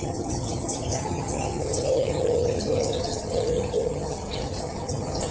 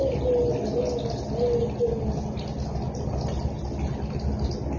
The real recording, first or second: second